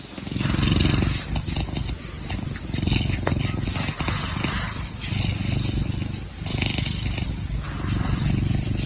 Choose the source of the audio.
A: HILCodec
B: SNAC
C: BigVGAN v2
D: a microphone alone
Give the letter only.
D